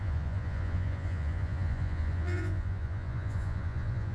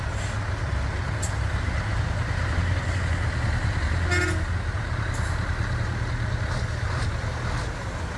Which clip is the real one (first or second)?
second